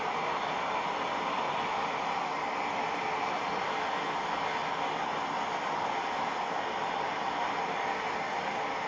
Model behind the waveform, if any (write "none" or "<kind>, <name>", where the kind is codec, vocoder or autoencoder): none